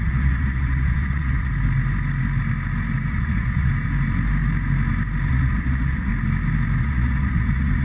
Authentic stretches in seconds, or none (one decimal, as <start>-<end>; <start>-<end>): 1.5-3.1; 3.7-5.3; 6.1-6.8